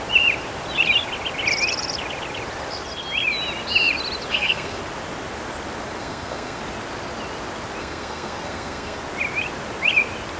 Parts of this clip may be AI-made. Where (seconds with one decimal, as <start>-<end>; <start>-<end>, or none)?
4.3-4.8; 6.0-6.6; 7.8-9.0